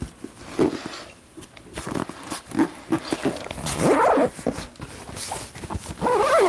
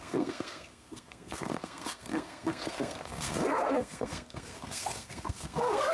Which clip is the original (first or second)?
first